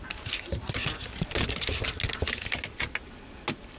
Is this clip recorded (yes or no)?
yes